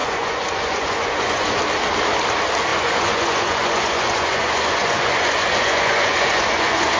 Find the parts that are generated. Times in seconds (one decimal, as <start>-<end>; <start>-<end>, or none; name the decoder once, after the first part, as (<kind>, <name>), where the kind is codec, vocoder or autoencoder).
0.0-1.6 (vocoder, Vocos); 2.7-7.0